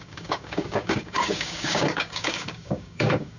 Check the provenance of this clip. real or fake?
fake